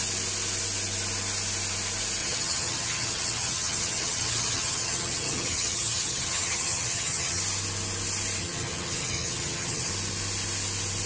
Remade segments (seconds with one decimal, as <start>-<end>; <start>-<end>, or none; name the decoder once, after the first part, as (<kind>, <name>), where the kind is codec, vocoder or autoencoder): 2.2-7.4 (vocoder, HiFi-GAN); 8.4-9.9